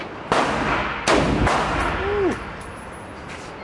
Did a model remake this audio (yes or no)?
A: no